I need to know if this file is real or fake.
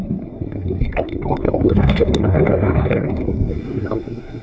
fake